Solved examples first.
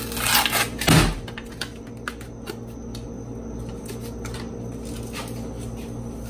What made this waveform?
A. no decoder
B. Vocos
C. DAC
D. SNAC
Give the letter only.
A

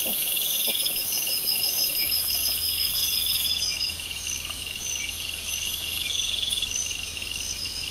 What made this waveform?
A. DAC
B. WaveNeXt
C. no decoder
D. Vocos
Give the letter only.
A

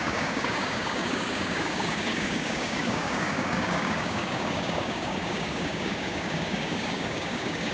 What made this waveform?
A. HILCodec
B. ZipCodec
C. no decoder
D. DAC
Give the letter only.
D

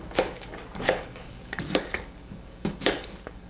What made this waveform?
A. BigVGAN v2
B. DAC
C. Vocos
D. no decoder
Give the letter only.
B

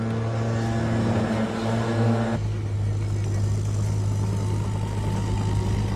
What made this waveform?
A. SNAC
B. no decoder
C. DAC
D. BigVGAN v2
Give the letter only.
B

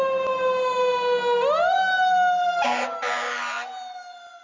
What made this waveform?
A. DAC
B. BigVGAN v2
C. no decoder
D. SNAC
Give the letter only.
C